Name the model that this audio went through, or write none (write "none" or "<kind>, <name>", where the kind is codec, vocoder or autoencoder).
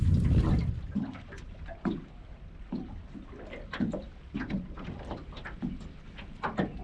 none